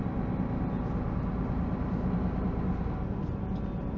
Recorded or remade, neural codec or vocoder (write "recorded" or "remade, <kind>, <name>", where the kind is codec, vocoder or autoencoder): recorded